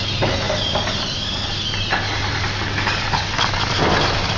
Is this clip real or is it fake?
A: real